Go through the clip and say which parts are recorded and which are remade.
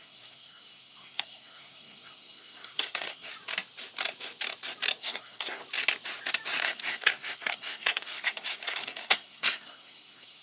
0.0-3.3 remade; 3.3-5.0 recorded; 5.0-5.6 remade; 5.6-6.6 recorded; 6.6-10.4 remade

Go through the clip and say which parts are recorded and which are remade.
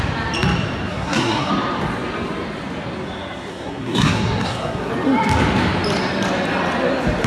0.0-0.9 recorded; 0.9-1.5 remade; 1.5-3.5 recorded; 3.5-4.9 remade; 4.9-7.3 recorded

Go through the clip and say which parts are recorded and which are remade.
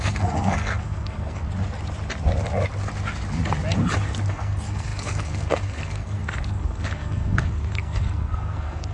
0.0-1.4 remade; 1.4-4.3 recorded; 4.3-8.9 remade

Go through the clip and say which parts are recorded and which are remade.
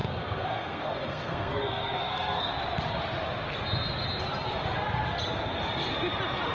0.0-2.5 remade; 2.5-6.5 recorded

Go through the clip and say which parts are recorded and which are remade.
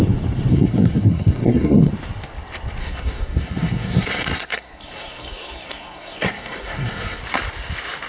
0.0-0.5 recorded; 0.5-1.9 remade; 1.9-2.8 recorded; 2.8-7.2 remade; 7.2-8.1 recorded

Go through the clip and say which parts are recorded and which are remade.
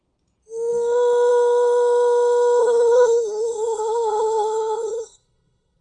0.0-2.6 recorded; 2.6-5.8 remade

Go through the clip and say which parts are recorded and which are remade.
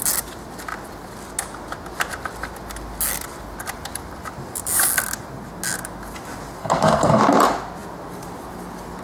0.0-6.6 recorded; 6.6-7.2 remade; 7.2-9.0 recorded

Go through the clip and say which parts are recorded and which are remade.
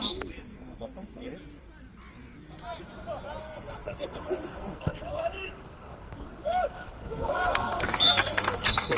0.0-1.3 remade; 1.3-3.4 recorded; 3.4-9.0 remade